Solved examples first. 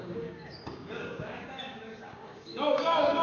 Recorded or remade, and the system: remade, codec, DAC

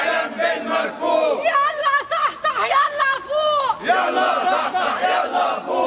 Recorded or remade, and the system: recorded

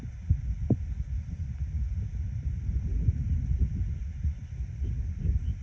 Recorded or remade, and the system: recorded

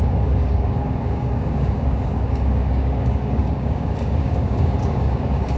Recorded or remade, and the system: remade, codec, DAC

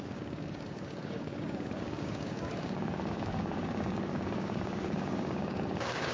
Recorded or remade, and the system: remade, codec, DAC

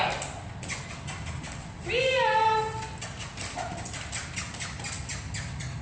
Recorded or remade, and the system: recorded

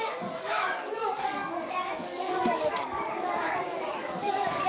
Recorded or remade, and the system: remade, codec, DAC